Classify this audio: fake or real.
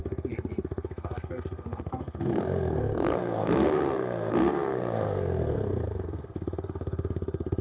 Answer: fake